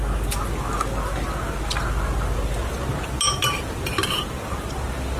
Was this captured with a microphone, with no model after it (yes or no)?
yes